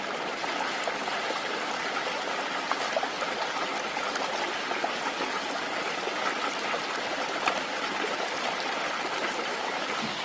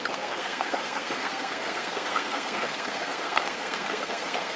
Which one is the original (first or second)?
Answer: first